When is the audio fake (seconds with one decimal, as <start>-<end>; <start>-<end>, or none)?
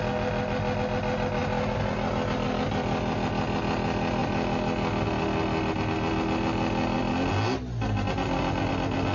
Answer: none